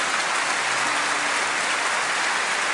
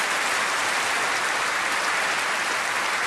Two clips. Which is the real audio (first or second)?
first